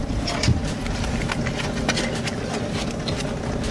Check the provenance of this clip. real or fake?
real